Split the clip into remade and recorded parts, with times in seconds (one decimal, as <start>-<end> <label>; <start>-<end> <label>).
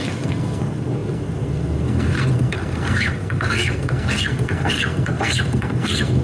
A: 0.0-6.2 remade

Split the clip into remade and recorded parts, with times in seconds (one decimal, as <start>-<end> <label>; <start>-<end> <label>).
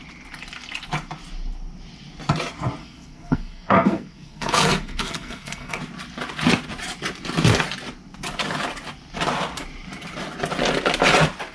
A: 0.0-2.8 recorded; 2.8-5.8 remade; 5.8-11.5 recorded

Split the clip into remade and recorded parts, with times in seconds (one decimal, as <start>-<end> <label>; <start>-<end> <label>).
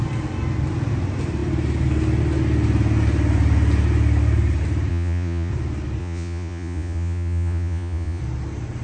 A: 0.0-4.9 recorded; 4.9-5.5 remade; 5.5-6.0 recorded; 6.0-8.2 remade; 8.2-8.8 recorded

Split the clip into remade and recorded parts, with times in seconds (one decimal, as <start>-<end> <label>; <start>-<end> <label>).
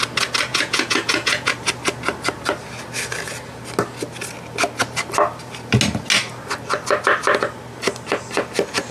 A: 0.0-0.5 recorded; 0.5-1.5 remade; 1.5-8.9 recorded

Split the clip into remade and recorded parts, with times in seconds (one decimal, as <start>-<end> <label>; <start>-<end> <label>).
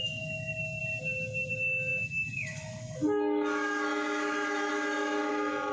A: 0.0-0.8 remade; 0.8-1.5 recorded; 1.5-5.7 remade